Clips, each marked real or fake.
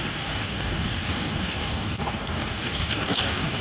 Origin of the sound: fake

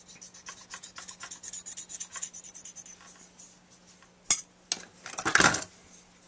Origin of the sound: real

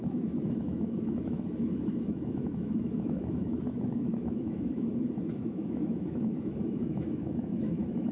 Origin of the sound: fake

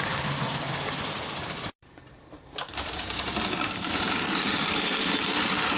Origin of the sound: fake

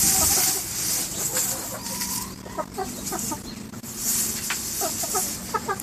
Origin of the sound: real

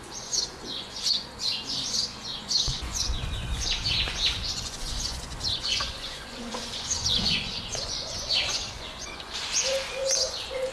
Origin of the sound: fake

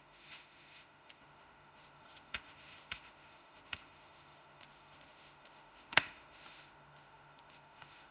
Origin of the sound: fake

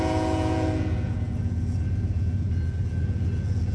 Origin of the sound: fake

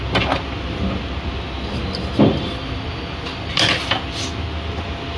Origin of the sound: real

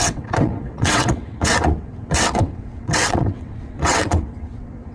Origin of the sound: fake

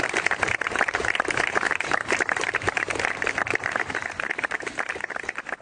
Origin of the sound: fake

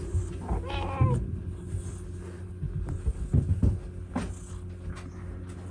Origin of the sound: real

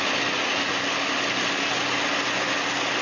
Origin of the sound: real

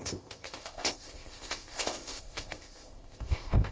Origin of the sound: fake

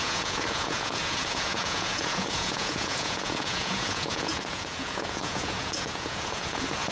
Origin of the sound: fake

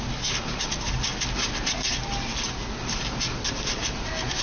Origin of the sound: real